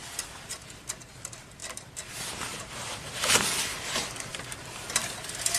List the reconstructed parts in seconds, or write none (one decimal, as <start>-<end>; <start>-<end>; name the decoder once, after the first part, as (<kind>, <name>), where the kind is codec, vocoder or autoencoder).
1.6-2.1 (vocoder, BigVGAN v2)